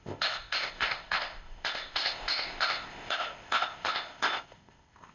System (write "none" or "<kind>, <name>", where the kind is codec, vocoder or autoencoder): codec, ZipCodec